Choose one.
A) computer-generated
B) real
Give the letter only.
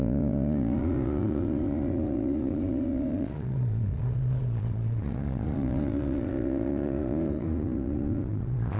A